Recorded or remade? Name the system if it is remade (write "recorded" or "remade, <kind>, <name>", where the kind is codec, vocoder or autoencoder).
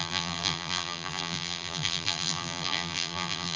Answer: remade, vocoder, BigVGAN v2